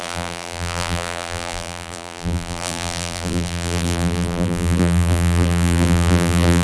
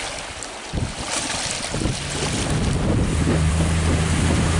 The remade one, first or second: first